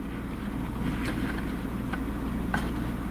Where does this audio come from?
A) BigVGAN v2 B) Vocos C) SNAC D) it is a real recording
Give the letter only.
D